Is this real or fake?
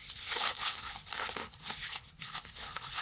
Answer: fake